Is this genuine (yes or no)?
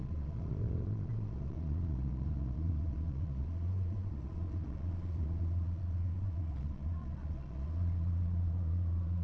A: no